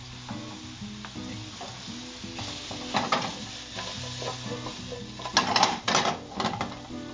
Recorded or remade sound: recorded